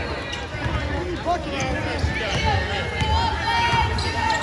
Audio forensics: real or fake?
real